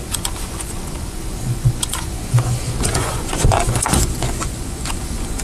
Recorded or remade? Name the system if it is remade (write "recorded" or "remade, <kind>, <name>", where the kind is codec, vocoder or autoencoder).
remade, vocoder, Vocos